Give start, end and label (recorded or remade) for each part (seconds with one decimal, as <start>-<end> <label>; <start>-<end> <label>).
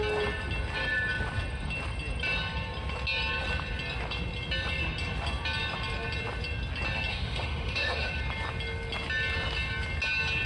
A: 0.0-7.1 recorded; 7.1-8.1 remade; 8.1-10.5 recorded